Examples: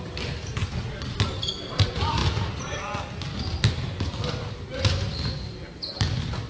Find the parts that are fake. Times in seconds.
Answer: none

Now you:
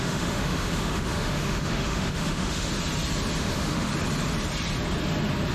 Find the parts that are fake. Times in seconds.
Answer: 0.0-2.7; 3.4-3.9

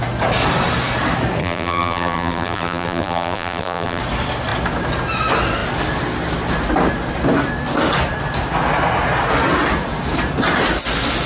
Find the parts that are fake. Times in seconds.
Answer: 1.4-4.0

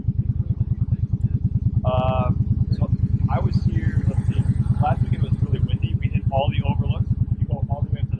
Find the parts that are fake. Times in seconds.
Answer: none

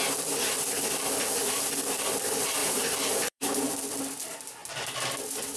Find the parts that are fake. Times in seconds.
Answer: 2.6-3.7

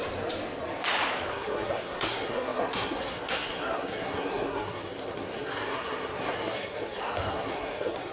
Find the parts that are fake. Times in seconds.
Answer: 1.3-8.1

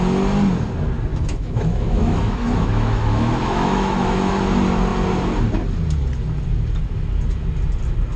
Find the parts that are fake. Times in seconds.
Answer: 1.1-4.3

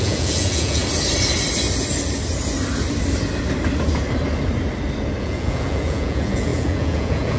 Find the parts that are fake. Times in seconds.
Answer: 0.0-0.8; 5.2-7.4